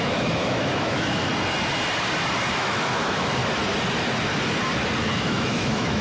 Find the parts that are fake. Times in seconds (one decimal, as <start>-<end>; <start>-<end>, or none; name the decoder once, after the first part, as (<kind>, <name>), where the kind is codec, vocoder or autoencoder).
0.0-1.3 (autoencoder, DAC-VAE); 2.5-3.4; 5.0-6.0